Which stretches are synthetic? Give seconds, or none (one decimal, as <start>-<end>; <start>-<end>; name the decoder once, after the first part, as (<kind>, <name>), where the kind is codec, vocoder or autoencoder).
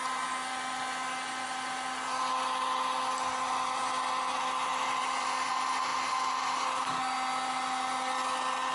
none